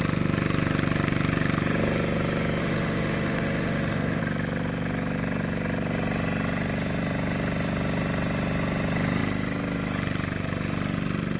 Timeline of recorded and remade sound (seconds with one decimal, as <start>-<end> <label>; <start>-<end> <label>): 0.0-2.6 recorded; 2.6-4.2 remade; 4.2-11.4 recorded